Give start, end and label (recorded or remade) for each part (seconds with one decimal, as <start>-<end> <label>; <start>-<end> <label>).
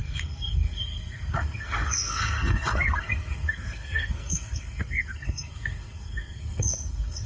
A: 0.0-7.3 remade